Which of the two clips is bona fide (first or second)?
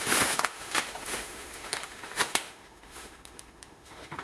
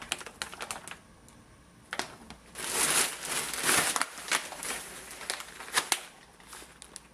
second